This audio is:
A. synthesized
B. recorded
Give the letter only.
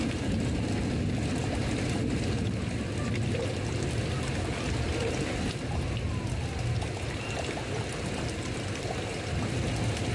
B